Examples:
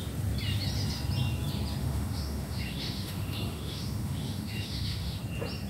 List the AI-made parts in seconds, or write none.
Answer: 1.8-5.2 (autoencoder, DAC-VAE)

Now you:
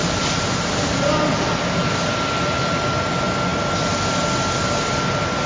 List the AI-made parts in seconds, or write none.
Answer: 0.0-2.6 (vocoder, BigVGAN v2)

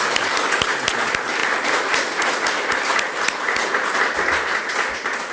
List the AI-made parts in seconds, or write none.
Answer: none

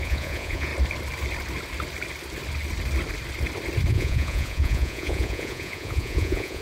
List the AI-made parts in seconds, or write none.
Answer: 0.0-0.7 (vocoder, Vocos); 3.9-6.6

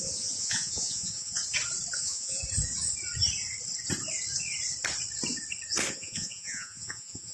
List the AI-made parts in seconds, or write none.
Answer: 0.0-1.4 (vocoder, Vocos); 2.0-2.4; 5.9-7.3

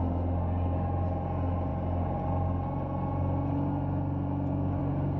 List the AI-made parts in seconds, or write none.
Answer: none

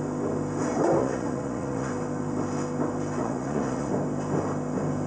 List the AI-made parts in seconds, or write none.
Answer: 1.0-1.9 (vocoder, Vocos); 3.2-3.9

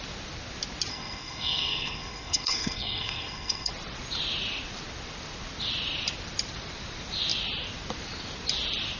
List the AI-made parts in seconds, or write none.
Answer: 0.9-3.7 (codec, SNAC)